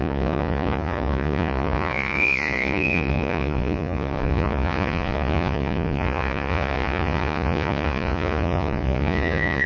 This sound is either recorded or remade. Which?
remade